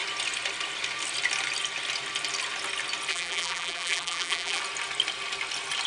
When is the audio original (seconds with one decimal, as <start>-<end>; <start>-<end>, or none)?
0.0-3.1; 4.6-5.9